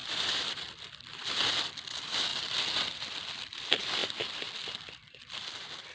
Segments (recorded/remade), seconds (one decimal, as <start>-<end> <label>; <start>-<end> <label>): 0.0-0.9 remade; 0.9-4.0 recorded; 4.0-4.7 remade; 4.7-5.9 recorded